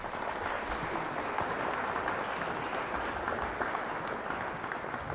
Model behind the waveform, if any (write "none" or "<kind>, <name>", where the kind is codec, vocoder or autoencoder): none